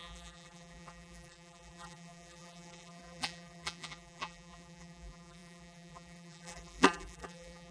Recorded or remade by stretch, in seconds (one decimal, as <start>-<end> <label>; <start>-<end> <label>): 0.0-7.7 remade

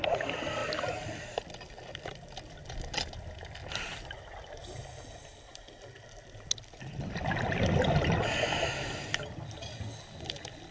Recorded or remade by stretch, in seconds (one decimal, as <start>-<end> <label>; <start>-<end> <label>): 0.0-10.7 recorded